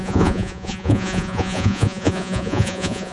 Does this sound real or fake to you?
fake